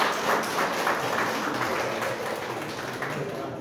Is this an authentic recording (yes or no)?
yes